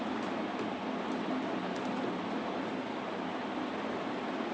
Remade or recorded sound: recorded